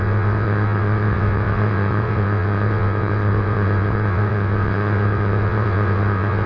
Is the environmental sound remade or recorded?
remade